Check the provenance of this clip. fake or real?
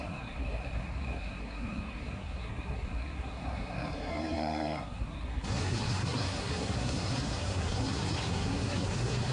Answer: fake